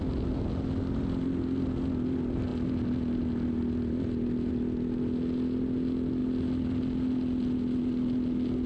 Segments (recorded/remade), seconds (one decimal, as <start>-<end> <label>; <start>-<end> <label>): 0.0-8.7 recorded